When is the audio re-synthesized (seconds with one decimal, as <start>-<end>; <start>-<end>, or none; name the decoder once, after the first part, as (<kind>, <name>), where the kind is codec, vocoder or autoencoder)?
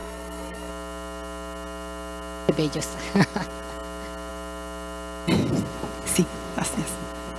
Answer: 0.0-0.7 (codec, SNAC)